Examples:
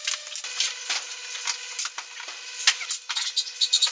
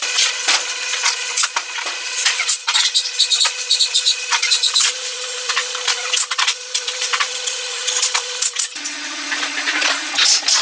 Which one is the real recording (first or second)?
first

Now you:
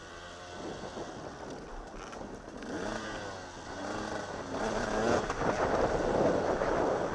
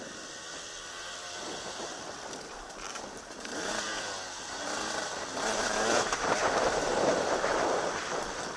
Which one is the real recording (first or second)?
first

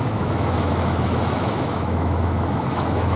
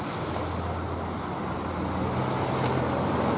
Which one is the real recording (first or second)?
second